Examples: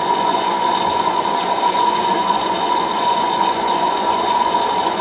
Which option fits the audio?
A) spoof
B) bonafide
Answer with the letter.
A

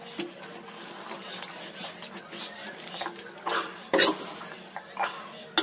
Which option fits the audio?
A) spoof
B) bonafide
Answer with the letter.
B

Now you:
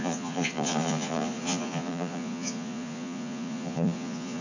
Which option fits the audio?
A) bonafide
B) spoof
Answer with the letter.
B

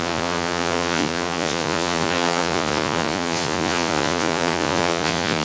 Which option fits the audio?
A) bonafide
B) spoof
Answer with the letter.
B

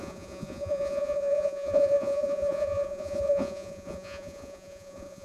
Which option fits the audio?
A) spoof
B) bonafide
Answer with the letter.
A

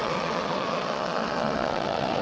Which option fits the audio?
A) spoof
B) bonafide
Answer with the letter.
A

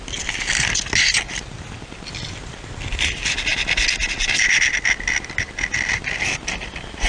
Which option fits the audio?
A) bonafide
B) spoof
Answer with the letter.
A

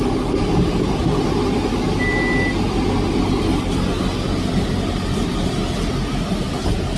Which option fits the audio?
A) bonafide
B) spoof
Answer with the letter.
A